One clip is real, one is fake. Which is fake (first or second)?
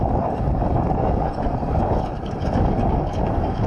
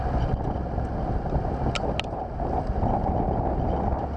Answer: first